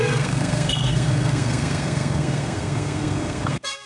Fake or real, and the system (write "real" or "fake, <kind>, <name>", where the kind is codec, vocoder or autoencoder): fake, codec, SNAC